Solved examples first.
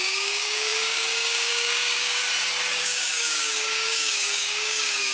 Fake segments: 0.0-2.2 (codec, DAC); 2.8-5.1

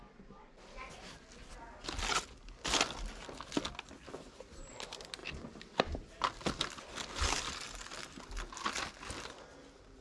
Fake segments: none

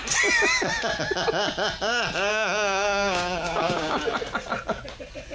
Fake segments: 2.3-4.0 (codec, DAC)

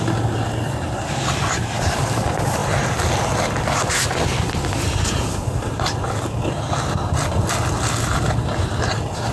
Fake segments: none

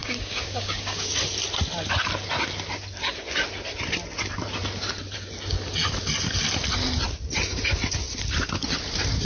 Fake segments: 0.0-1.1 (codec, DAC)

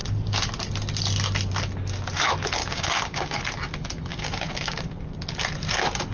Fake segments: 2.6-3.4 (codec, DAC); 4.1-4.9

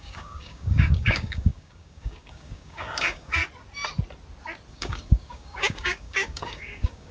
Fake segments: 0.0-3.4 (codec, DAC); 4.7-7.1